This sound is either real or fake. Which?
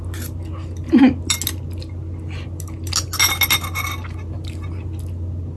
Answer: real